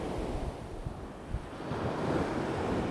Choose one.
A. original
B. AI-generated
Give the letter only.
A